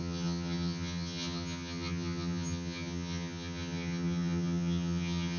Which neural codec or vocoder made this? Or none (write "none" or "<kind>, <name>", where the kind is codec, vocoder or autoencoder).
vocoder, HiFi-GAN